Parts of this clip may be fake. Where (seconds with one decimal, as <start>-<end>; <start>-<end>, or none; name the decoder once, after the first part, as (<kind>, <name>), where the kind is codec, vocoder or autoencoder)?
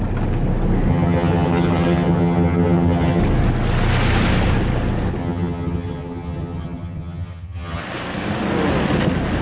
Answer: 0.9-3.2 (vocoder, HiFi-GAN); 5.2-7.8